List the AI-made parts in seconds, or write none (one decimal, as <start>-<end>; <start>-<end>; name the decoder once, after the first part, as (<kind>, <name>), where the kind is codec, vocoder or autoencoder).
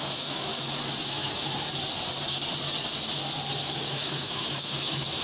0.0-0.5 (autoencoder, DAC-VAE); 1.1-1.5; 3.6-5.2